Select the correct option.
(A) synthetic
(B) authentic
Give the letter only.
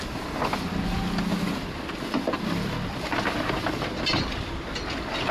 B